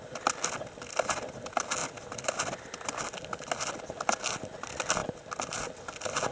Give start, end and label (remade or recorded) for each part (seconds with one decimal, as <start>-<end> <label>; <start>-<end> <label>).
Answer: 0.0-5.0 recorded; 5.0-5.7 remade; 5.7-6.3 recorded